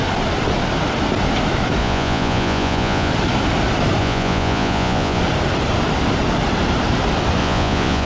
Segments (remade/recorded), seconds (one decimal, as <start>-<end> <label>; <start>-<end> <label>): 0.0-1.8 recorded; 1.8-3.1 remade; 3.1-4.0 recorded; 4.0-5.2 remade; 5.2-7.4 recorded; 7.4-8.1 remade